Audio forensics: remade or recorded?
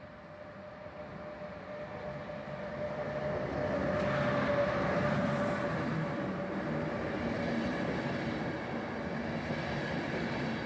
recorded